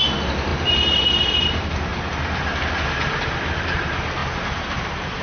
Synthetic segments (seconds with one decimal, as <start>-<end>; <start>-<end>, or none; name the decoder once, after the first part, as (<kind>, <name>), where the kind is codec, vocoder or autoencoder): 0.0-1.9 (vocoder, BigVGAN v2); 3.2-5.2